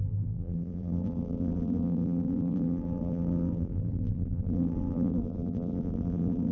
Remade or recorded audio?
remade